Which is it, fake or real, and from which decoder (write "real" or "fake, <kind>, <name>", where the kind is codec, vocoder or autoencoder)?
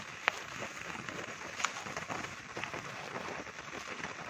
real